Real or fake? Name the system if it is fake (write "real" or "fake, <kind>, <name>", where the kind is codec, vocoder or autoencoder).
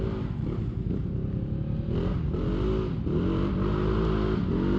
real